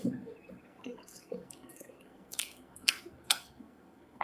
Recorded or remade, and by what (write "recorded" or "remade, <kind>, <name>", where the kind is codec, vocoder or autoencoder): remade, codec, SNAC